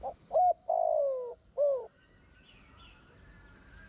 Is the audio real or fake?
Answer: real